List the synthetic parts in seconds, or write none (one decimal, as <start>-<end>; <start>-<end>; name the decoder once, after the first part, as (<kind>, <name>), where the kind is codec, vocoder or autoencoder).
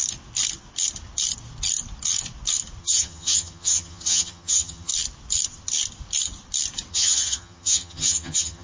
2.8-4.9 (vocoder, HiFi-GAN); 6.9-8.6